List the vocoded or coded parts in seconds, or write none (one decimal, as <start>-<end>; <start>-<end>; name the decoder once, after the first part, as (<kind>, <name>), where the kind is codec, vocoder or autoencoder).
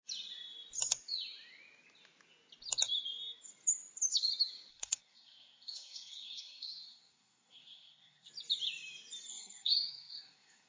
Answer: 4.7-8.3 (codec, SNAC); 9.3-10.7